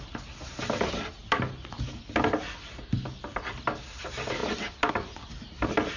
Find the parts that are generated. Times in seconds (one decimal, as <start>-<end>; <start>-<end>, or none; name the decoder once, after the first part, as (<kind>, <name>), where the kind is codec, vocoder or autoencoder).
none